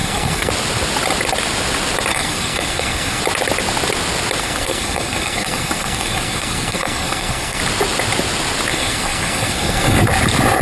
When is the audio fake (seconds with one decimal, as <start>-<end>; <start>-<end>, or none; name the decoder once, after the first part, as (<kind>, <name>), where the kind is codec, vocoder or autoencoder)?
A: 0.0-0.5 (codec, SNAC); 2.1-3.2; 4.4-7.6; 8.7-10.0

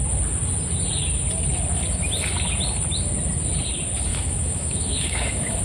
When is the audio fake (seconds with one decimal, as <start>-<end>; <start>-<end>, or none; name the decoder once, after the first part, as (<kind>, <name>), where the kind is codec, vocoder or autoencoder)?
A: 4.1-5.6 (autoencoder, DAC-VAE)

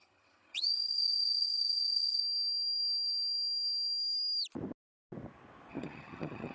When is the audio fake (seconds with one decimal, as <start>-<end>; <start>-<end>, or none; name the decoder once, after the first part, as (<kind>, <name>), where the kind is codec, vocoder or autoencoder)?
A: 0.0-2.2 (vocoder, HiFi-GAN); 5.7-6.5

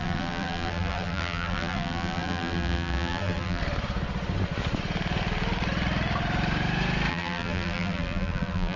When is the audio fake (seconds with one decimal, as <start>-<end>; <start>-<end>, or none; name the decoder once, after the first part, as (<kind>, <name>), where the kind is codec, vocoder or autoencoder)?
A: 0.0-3.6 (vocoder, BigVGAN v2); 7.1-8.8

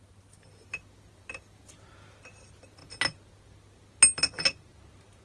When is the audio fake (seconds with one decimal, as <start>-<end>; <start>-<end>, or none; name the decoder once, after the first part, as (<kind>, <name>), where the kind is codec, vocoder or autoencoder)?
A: none

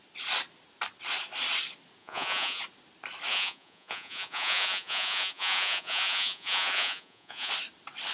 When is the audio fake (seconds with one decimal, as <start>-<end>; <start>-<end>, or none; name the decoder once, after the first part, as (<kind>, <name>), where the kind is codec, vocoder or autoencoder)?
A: 2.0-2.6 (vocoder, Vocos); 3.3-7.5

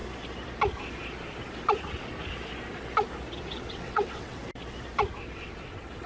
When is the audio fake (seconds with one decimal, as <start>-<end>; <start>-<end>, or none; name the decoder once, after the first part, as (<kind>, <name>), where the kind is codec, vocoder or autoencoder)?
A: 3.7-4.4 (vocoder, WaveNeXt); 5.2-6.1

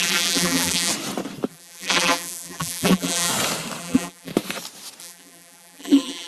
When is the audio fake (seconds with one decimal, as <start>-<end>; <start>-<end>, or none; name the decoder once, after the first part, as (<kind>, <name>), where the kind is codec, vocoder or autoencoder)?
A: 0.0-0.9 (vocoder, BigVGAN v2); 1.5-3.3; 3.8-4.3; 5.0-6.3